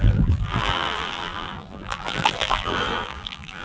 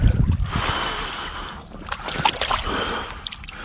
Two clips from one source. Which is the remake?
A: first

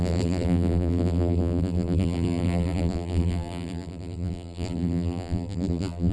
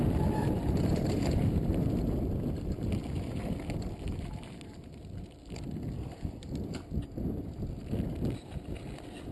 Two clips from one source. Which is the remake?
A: first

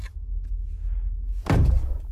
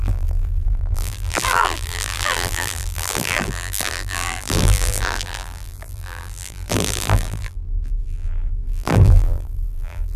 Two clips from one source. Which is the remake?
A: second